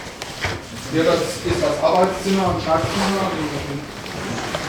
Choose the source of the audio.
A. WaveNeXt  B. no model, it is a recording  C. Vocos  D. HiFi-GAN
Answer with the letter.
B